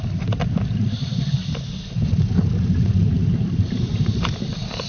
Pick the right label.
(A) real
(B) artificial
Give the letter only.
A